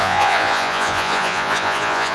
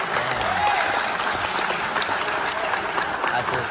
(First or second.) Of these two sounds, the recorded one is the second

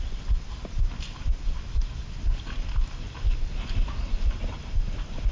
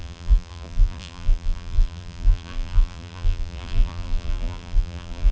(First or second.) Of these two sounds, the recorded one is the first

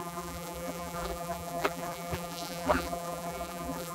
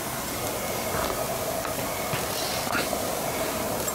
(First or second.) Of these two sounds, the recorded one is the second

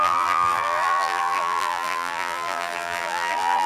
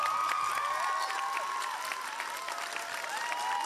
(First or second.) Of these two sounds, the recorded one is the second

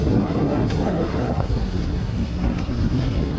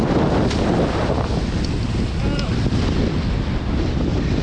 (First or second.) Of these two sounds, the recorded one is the second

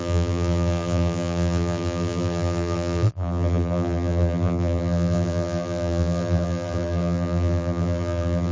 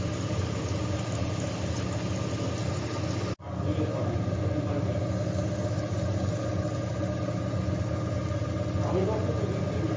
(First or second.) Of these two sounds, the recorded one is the second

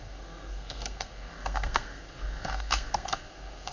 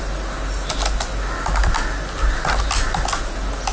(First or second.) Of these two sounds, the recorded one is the second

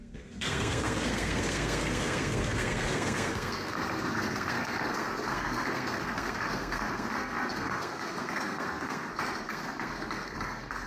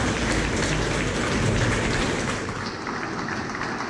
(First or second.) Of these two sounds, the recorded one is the second